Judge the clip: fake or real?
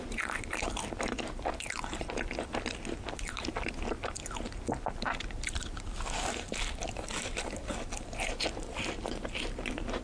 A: real